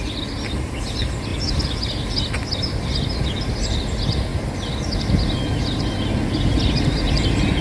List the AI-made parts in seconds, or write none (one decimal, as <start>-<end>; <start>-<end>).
none